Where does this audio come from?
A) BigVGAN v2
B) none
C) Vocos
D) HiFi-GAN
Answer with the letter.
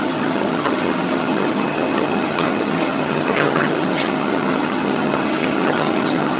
D